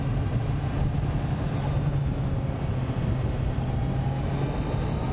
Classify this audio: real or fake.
real